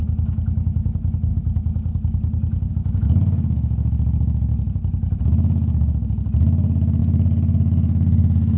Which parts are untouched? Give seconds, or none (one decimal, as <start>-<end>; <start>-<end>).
4.5-5.2

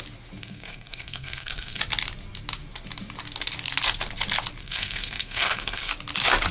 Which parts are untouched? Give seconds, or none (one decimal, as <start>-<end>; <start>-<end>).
0.0-0.4; 1.8-4.6; 5.9-6.5

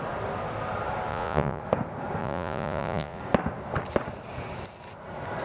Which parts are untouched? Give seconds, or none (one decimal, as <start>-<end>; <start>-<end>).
0.0-1.1; 1.6-2.2; 3.2-5.4

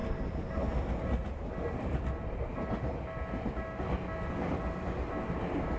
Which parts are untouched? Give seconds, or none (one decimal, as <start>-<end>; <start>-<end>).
0.0-5.8

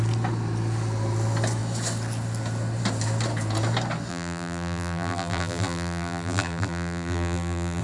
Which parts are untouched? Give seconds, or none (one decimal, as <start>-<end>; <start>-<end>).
0.0-4.1

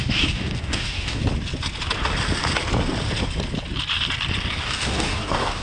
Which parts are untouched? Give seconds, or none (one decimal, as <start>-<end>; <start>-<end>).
1.2-4.6